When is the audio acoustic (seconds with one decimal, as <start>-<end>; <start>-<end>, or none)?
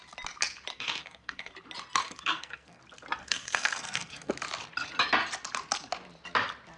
0.0-0.7; 1.5-2.0; 2.8-3.2; 4.3-6.8